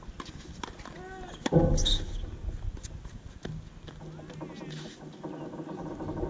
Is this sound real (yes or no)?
yes